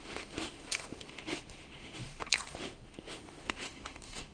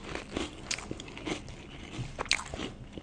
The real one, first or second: second